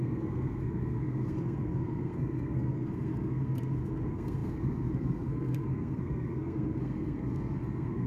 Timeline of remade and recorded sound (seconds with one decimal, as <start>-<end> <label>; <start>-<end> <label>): 0.0-8.1 remade